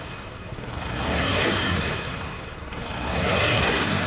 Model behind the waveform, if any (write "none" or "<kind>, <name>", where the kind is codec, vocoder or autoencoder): codec, SNAC